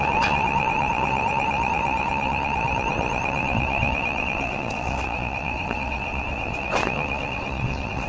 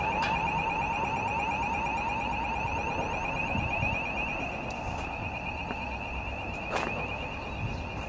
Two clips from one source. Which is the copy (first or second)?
first